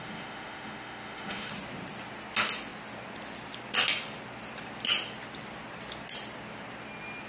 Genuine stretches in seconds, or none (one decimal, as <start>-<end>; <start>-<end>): 1.5-7.3